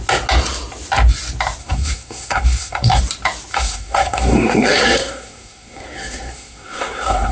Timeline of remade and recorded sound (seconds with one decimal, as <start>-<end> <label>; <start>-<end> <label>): 0.0-1.6 recorded; 1.6-3.0 remade; 3.0-3.5 recorded; 3.5-7.3 remade